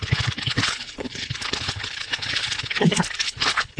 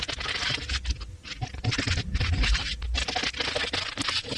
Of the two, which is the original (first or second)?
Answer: second